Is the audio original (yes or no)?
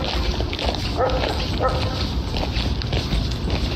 yes